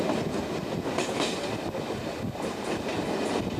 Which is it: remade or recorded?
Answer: recorded